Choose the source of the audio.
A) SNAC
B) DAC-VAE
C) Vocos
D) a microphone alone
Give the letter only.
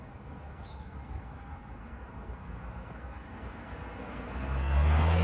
A